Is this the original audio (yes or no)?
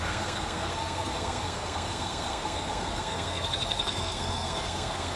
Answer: no